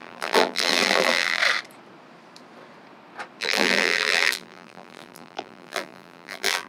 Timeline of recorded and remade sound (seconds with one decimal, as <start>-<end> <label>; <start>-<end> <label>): 0.0-1.4 remade; 1.4-3.4 recorded; 3.4-6.7 remade

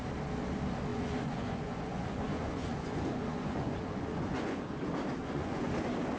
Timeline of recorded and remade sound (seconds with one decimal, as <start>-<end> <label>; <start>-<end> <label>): 0.0-0.9 recorded; 0.9-4.6 remade; 4.6-5.2 recorded; 5.2-5.7 remade; 5.7-6.2 recorded

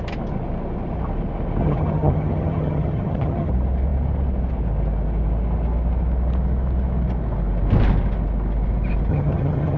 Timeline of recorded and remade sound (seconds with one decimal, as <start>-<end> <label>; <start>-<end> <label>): 0.0-1.6 recorded; 1.6-3.5 remade; 3.5-9.1 recorded; 9.1-9.8 remade

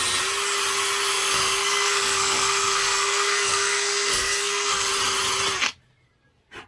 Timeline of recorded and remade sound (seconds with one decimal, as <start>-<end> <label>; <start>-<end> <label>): 0.0-1.1 recorded; 1.1-4.9 remade; 4.9-6.7 recorded

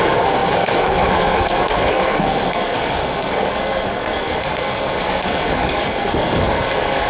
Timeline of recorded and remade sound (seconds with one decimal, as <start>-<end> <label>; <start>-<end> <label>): 0.0-7.1 remade

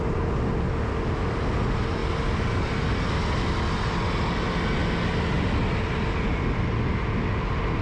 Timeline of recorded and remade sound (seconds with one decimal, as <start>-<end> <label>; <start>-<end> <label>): 0.0-7.8 recorded